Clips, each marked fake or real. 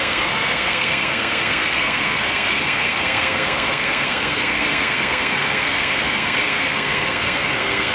fake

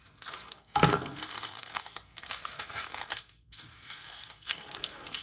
fake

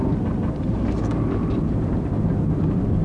real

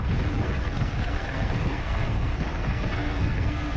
fake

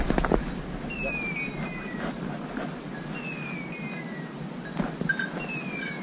real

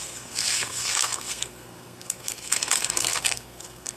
fake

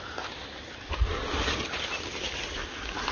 real